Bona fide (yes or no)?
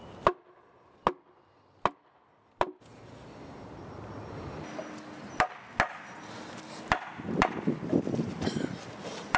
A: yes